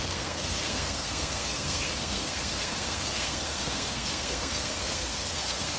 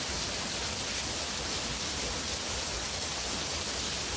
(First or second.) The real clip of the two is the second